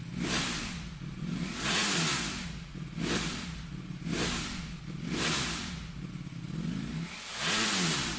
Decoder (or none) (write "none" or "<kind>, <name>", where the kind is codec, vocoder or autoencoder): none